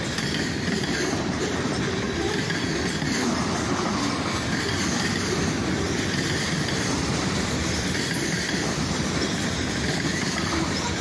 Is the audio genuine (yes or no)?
no